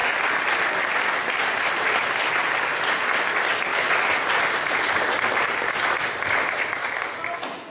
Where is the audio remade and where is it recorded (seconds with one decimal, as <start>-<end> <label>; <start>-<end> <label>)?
0.0-1.2 recorded; 1.2-2.0 remade; 2.0-3.7 recorded; 3.7-6.6 remade; 6.6-7.7 recorded